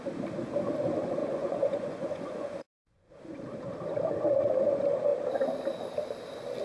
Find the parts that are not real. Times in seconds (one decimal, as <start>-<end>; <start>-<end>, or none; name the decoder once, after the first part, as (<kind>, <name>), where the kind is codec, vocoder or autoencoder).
1.2-3.1 (vocoder, Vocos)